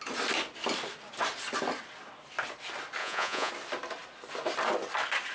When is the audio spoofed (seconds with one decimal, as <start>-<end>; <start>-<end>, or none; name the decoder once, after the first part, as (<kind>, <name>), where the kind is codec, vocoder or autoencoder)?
3.0-3.5 (vocoder, Vocos)